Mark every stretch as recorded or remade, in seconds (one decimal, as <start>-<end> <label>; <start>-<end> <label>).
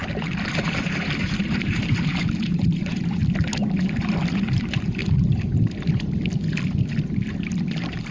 0.0-3.2 remade; 3.2-4.3 recorded; 4.3-5.0 remade; 5.0-7.3 recorded; 7.3-8.1 remade